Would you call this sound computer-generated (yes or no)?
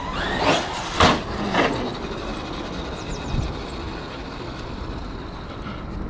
no